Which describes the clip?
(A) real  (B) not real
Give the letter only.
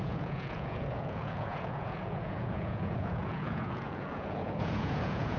B